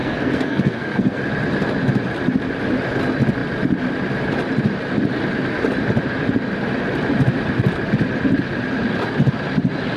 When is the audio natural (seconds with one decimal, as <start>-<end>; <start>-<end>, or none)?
1.2-10.0